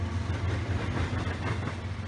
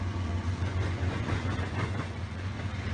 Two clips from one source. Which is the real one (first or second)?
first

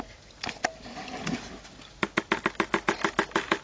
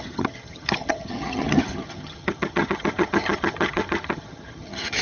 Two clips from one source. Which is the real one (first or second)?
first